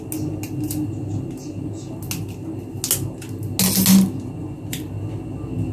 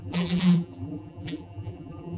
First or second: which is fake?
second